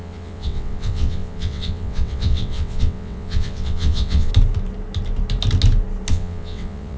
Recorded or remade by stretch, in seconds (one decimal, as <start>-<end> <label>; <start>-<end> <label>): 0.0-4.3 remade; 4.3-6.1 recorded; 6.1-7.0 remade